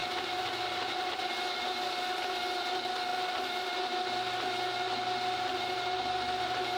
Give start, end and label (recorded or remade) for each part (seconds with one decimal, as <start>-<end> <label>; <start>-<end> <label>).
0.0-6.8 recorded